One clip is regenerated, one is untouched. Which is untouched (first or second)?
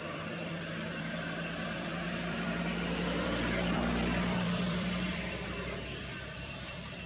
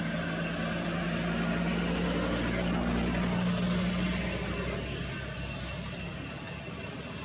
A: second